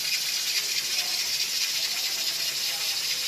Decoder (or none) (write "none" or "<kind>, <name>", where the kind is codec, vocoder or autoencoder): none